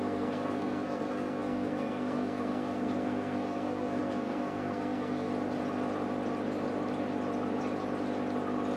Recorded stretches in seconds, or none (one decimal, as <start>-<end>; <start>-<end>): 5.3-8.8